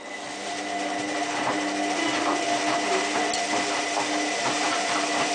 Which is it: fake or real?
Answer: real